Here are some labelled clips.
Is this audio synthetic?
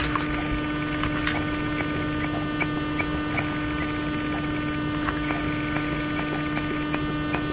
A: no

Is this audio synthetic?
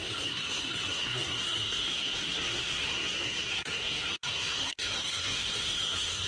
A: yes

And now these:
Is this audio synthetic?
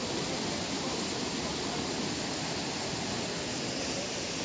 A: no